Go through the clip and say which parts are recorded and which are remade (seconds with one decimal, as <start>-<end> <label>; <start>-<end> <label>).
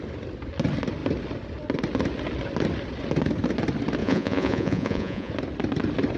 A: 0.0-4.0 recorded; 4.0-5.3 remade; 5.3-6.2 recorded